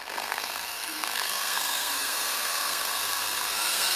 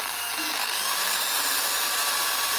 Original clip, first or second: second